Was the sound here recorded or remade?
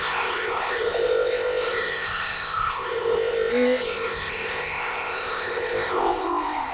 remade